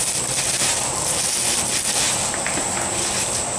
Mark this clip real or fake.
real